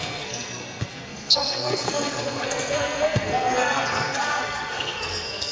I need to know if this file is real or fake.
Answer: fake